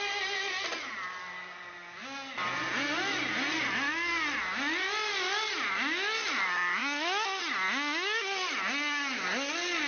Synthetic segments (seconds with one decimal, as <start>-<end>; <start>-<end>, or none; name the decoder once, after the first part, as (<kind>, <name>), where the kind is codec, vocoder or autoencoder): none